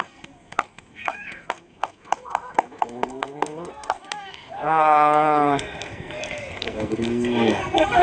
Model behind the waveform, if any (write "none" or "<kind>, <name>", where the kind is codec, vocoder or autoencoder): codec, SNAC